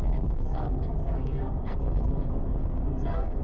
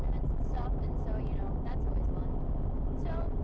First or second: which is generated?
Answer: first